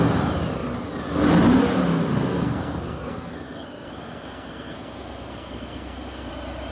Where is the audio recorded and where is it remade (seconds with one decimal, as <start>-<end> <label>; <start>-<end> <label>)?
0.0-2.3 recorded; 2.3-6.3 remade; 6.3-6.7 recorded